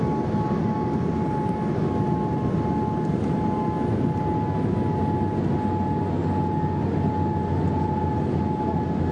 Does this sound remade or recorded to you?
recorded